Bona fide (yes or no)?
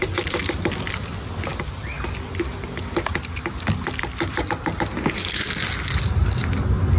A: yes